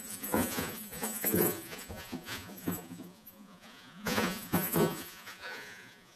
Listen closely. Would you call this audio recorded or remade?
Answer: remade